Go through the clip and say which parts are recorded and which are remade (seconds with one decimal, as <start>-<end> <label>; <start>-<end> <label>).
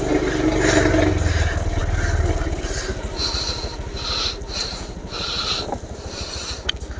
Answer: 0.0-7.0 recorded